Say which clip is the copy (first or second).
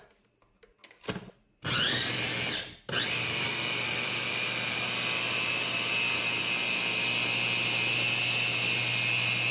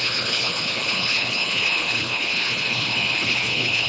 second